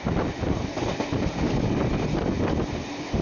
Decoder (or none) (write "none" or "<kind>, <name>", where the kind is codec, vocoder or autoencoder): none